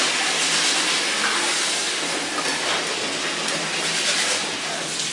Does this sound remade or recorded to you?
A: recorded